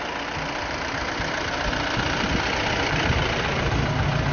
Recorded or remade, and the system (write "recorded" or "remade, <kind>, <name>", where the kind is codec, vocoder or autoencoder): recorded